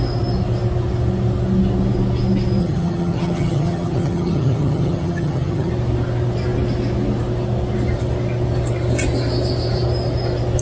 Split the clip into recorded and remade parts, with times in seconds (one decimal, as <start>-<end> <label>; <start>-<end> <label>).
0.0-2.6 recorded; 2.6-5.7 remade; 5.7-10.6 recorded